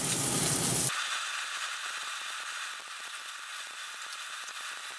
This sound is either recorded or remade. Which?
recorded